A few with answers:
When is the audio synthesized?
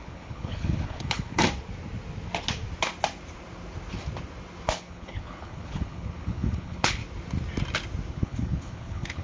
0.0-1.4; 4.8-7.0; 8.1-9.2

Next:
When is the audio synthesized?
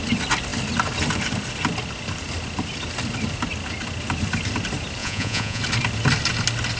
5.0-5.6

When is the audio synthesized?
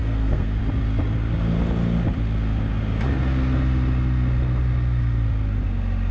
0.0-0.6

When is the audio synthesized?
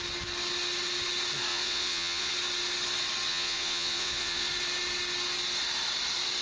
1.5-2.3; 3.3-4.5